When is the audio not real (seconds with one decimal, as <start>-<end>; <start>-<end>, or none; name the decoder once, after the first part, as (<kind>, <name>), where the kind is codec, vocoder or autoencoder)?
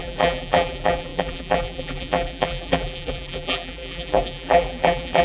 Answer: 0.0-5.2 (vocoder, BigVGAN v2)